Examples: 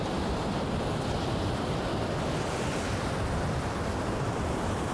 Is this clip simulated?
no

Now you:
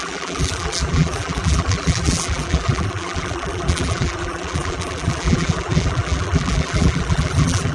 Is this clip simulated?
yes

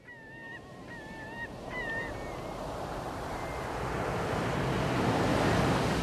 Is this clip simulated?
no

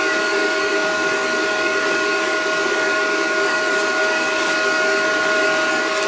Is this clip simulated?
yes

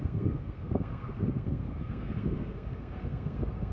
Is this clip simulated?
yes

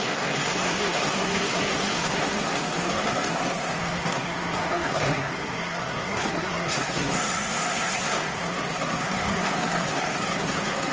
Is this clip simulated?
yes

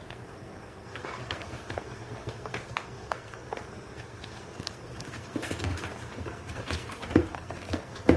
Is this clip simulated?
yes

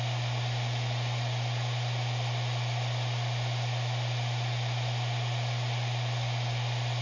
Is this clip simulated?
no